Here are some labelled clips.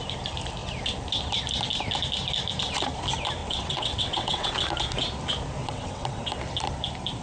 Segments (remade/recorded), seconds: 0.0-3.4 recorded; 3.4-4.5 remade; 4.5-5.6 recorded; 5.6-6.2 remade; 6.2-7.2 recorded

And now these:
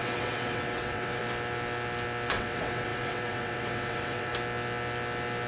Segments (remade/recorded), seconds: 0.0-1.2 remade; 1.2-2.3 recorded; 2.3-4.3 remade; 4.3-5.5 recorded

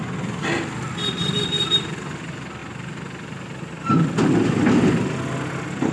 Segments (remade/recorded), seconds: 0.0-5.9 recorded

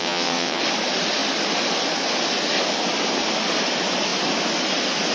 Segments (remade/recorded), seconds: 0.0-0.6 remade; 0.6-5.1 recorded

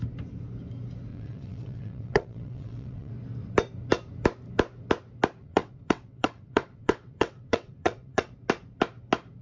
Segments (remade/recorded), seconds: 0.0-1.1 recorded; 1.1-3.1 remade; 3.1-5.4 recorded; 5.4-8.3 remade; 8.3-9.4 recorded

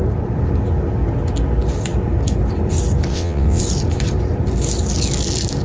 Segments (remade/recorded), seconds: 0.0-3.1 recorded; 3.1-3.6 remade; 3.6-5.6 recorded